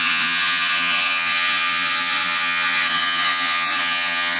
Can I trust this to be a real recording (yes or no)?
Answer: no